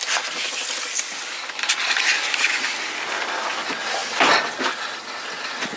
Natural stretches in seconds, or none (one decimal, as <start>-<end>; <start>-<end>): 0.0-5.8